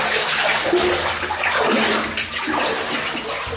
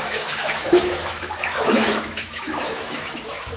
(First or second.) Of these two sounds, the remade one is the second